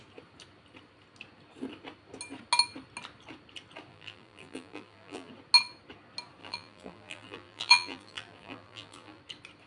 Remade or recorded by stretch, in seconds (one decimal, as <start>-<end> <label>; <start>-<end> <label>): 0.0-3.9 recorded; 3.9-5.3 remade; 5.3-6.4 recorded; 6.4-9.2 remade; 9.2-9.7 recorded

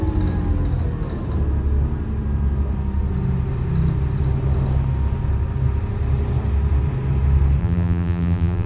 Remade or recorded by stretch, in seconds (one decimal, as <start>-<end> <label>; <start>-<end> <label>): 0.0-7.6 recorded; 7.6-8.7 remade

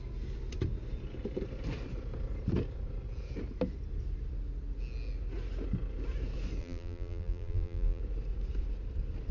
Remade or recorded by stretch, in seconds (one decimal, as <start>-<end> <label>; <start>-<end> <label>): 0.0-6.6 recorded; 6.6-8.0 remade; 8.0-9.3 recorded

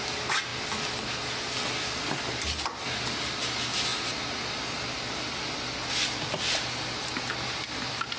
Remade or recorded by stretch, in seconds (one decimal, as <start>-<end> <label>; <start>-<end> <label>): 0.0-8.2 recorded

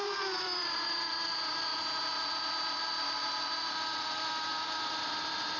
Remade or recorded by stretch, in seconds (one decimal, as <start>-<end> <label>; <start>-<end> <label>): 0.0-1.7 remade; 1.7-3.5 recorded; 3.5-5.6 remade

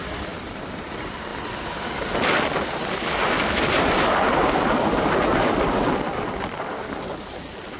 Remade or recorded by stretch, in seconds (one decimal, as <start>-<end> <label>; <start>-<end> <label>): 0.0-7.8 recorded